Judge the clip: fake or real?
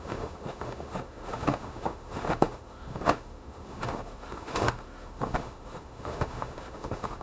fake